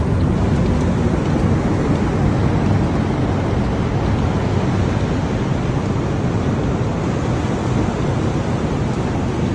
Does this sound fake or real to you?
real